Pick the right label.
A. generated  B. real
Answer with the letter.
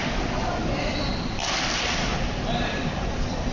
B